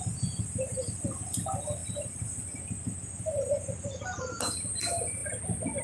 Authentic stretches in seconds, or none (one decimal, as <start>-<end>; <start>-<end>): 0.0-5.8